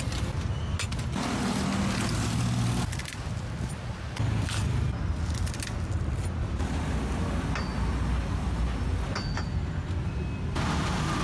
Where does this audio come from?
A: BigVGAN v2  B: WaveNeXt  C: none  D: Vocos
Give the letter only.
C